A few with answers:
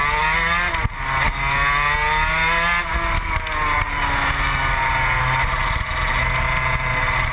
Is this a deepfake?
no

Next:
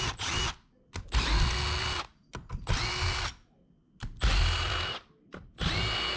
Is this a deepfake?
no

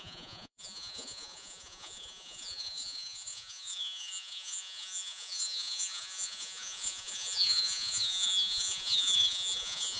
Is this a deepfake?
yes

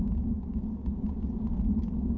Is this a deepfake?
no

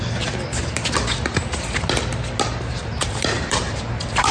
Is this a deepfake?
no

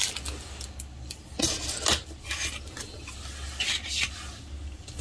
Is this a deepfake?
no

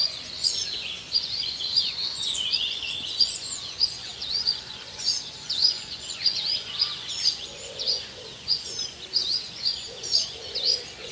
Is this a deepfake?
yes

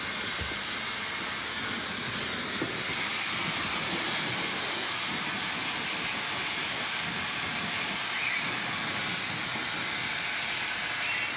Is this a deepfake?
no